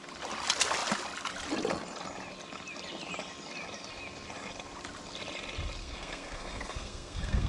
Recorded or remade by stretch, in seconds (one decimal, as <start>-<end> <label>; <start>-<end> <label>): 0.0-5.8 recorded; 5.8-7.5 remade